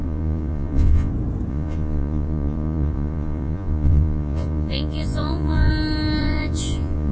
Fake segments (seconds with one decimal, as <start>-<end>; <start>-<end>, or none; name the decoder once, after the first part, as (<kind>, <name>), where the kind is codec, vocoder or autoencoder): 0.0-1.1 (vocoder, Vocos); 1.5-5.7; 6.2-7.1